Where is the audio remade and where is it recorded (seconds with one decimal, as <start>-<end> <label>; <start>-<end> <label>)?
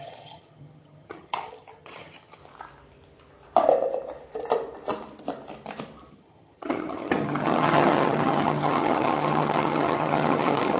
0.0-2.4 remade; 2.4-6.1 recorded; 6.1-10.8 remade